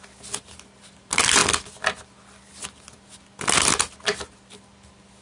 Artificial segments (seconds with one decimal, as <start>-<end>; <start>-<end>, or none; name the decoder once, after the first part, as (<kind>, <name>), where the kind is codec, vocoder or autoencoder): none